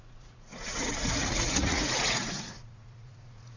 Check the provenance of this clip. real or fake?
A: fake